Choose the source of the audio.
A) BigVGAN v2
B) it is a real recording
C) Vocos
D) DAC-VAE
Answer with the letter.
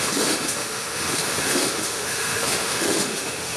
D